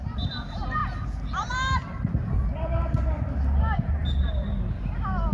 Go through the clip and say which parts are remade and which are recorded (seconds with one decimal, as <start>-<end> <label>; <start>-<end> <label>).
0.0-5.3 recorded